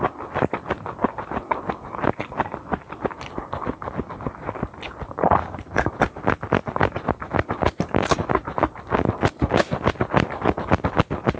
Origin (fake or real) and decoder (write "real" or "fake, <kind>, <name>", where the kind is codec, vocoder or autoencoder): real